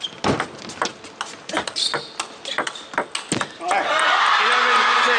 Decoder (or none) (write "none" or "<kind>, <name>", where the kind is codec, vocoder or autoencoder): none